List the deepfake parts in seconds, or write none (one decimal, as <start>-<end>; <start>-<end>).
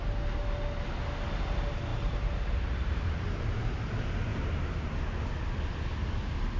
1.9-3.2; 4.3-4.9